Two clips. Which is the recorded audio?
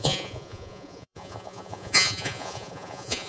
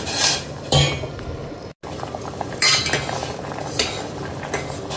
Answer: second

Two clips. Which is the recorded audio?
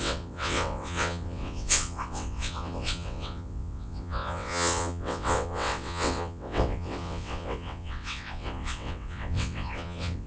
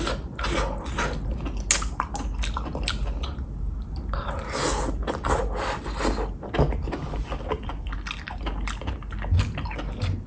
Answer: second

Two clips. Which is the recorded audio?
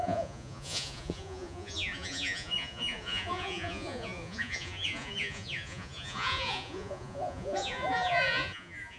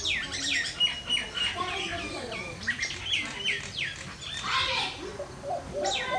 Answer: second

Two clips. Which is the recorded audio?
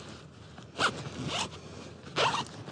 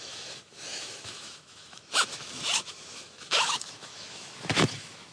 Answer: first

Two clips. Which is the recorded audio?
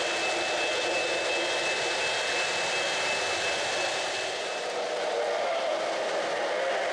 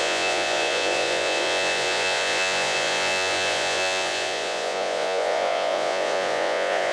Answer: first